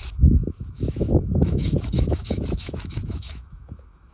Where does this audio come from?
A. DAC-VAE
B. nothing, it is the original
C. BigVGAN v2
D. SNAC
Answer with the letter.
A